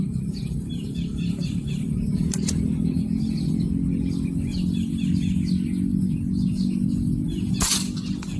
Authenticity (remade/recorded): recorded